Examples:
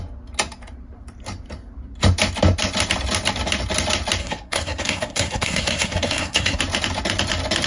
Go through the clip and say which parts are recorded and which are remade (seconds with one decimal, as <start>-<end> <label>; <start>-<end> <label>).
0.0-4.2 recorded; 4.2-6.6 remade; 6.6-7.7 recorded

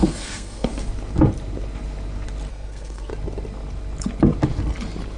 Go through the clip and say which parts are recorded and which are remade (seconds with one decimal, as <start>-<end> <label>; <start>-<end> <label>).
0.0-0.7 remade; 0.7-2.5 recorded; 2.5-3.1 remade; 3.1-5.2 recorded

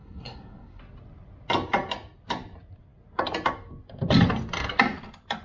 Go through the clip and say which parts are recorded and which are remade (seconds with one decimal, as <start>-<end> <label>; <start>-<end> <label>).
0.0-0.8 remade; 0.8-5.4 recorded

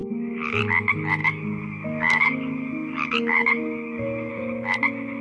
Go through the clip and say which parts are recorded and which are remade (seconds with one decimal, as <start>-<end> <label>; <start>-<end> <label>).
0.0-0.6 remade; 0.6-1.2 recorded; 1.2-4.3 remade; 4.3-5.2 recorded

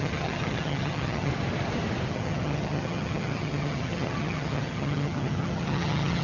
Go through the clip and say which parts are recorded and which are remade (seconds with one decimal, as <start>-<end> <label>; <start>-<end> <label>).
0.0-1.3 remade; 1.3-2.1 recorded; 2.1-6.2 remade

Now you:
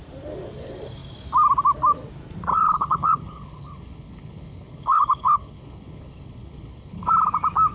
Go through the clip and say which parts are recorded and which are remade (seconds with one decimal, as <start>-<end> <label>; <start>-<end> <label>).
0.0-2.5 recorded; 2.5-7.1 remade; 7.1-7.7 recorded

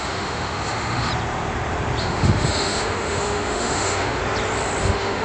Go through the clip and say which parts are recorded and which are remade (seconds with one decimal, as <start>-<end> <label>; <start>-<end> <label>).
0.0-1.1 remade; 1.1-2.0 recorded; 2.0-4.2 remade; 4.2-4.8 recorded; 4.8-5.2 remade

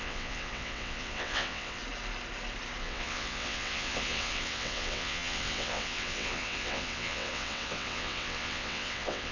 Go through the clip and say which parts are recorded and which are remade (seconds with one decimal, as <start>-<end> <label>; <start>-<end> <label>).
0.0-1.8 remade; 1.8-2.8 recorded; 2.8-9.3 remade